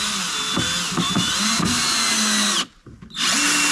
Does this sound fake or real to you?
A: real